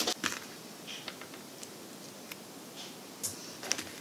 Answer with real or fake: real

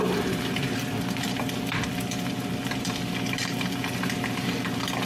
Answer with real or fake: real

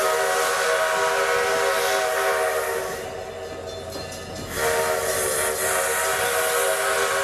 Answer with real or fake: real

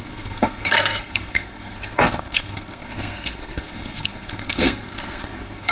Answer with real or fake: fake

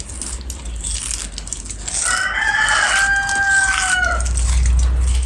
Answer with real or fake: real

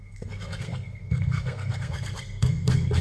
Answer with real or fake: fake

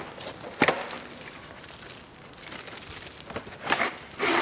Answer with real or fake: real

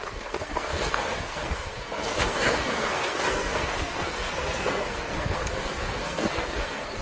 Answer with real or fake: fake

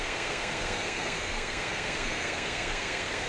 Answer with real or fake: fake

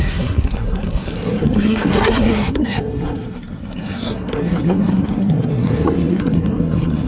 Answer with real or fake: fake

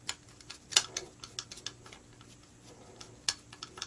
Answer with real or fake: real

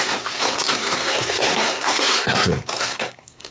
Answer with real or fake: fake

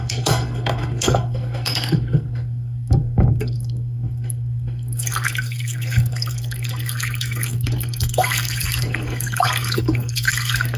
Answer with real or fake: fake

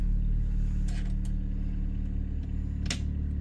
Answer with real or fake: real